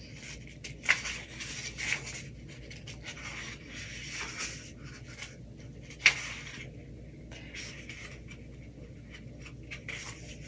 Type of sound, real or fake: real